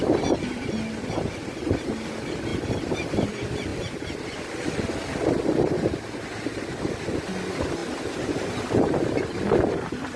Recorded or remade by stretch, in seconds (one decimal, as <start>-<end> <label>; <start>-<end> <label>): 0.0-2.5 remade; 2.5-3.3 recorded; 3.3-7.8 remade; 7.8-9.7 recorded; 9.7-10.2 remade